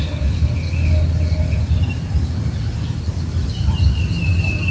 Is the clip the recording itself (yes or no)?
yes